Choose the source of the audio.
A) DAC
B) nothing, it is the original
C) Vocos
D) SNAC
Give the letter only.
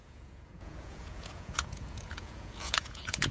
C